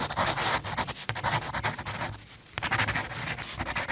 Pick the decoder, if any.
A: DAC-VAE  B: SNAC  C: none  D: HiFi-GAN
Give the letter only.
C